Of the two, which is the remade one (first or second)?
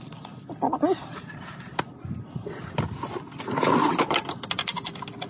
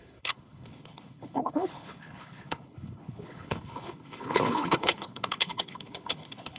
second